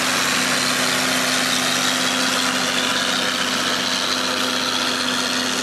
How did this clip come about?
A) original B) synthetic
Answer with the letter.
A